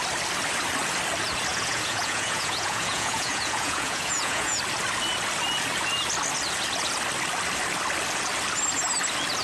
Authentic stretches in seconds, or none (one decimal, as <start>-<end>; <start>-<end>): 0.0-1.5; 4.6-9.4